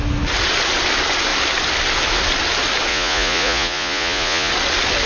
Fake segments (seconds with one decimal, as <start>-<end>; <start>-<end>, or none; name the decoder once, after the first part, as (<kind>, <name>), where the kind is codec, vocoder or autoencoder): 2.9-4.5 (vocoder, Vocos)